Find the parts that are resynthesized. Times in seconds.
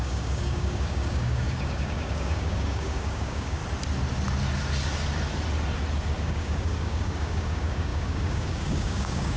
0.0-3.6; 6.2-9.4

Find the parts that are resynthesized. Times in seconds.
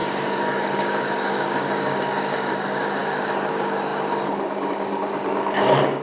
0.0-6.0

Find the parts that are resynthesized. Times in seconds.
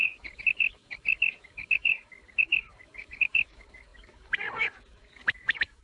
0.0-5.8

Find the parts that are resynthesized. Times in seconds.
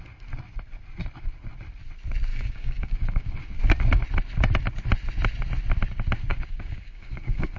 2.3-3.6; 6.3-7.6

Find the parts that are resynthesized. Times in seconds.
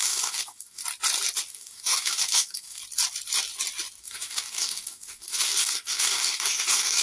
0.0-0.8; 1.5-2.8; 4.0-7.0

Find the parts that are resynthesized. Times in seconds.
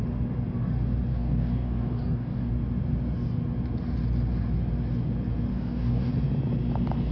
1.1-2.5; 5.5-6.1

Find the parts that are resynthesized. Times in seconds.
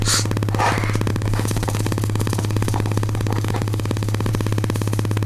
1.1-4.3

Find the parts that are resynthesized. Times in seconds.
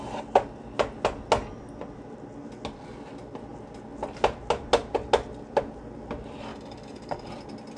6.5-7.3